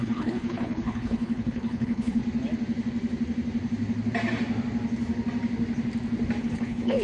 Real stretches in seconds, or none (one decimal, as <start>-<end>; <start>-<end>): 2.2-6.4